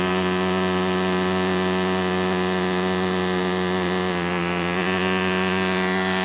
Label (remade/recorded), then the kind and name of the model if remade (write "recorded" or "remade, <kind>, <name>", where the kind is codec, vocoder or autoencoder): recorded